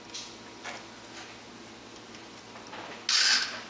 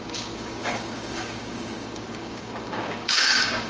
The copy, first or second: second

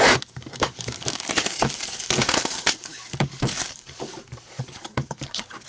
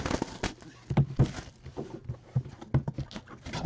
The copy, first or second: first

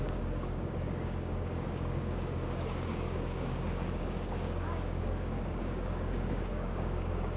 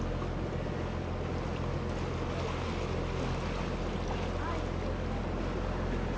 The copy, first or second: first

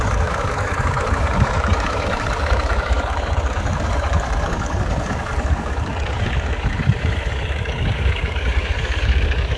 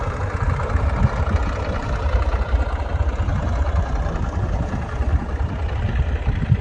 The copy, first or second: first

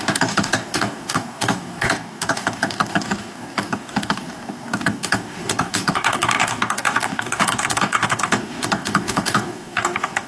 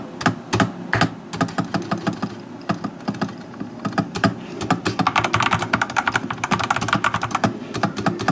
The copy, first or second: first